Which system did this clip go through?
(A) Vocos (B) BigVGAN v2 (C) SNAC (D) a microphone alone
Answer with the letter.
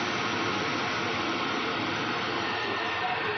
D